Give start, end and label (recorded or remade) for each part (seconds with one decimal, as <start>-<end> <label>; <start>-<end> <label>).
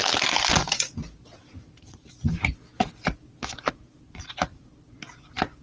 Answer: 0.0-5.6 recorded